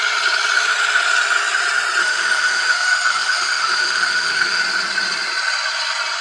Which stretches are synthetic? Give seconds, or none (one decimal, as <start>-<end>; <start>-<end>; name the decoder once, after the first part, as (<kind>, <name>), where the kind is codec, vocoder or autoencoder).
2.0-4.6 (autoencoder, DAC-VAE)